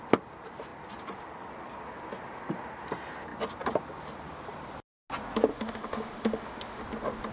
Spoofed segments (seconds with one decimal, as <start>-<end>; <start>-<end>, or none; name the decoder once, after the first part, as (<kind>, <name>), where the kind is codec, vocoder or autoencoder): 5.5-6.8 (autoencoder, DAC-VAE)